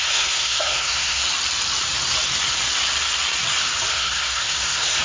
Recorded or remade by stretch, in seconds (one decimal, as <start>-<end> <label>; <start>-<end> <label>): 0.0-1.2 remade; 1.2-3.9 recorded; 3.9-5.0 remade